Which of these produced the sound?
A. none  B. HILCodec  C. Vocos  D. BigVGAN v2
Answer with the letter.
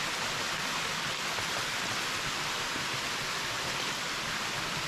A